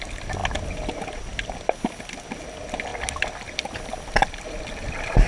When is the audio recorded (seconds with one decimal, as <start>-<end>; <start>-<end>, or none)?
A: 0.0-5.3